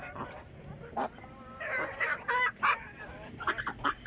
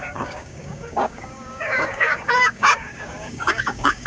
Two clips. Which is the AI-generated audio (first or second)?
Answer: second